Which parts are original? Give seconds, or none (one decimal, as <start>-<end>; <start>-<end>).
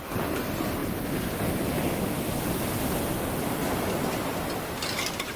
none